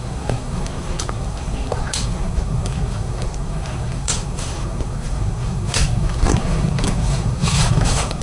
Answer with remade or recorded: remade